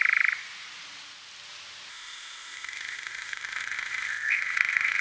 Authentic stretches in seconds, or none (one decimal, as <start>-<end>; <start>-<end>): 0.0-1.9